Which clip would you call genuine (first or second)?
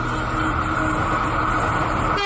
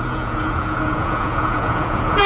first